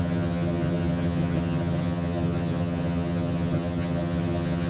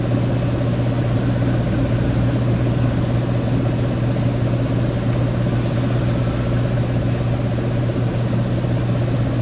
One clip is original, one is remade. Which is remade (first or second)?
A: first